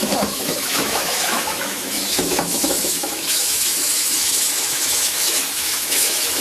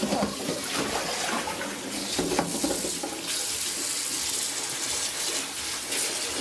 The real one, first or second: second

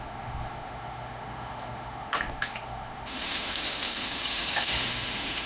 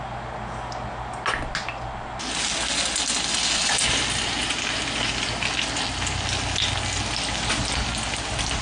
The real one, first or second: second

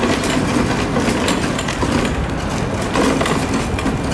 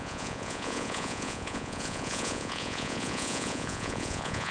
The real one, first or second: first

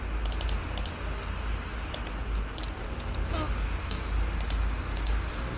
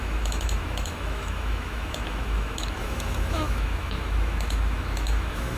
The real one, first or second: first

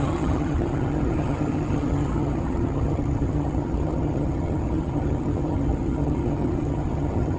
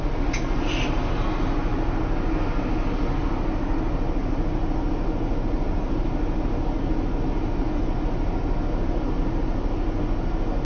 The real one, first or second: second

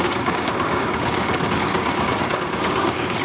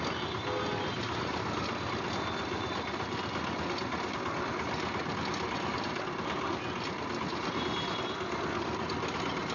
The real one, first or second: second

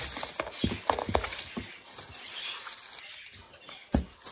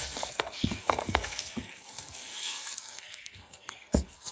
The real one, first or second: first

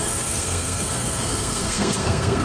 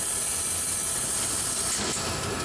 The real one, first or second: second